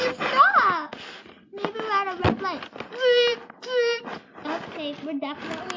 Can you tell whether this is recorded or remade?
recorded